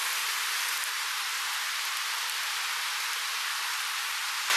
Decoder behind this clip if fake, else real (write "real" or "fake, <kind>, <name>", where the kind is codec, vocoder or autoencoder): real